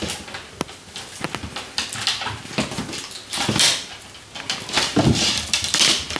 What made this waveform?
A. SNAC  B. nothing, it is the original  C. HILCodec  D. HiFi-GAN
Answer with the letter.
B